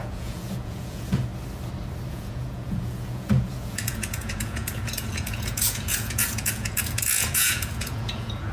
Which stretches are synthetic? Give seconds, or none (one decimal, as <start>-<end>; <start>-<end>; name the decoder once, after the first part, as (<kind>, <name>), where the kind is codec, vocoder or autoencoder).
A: 0.0-1.3 (vocoder, Vocos); 2.1-8.5